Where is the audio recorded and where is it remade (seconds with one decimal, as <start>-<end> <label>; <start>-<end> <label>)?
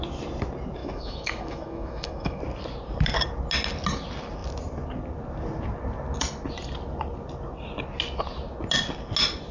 0.0-0.8 recorded; 0.8-2.4 remade; 2.4-9.5 recorded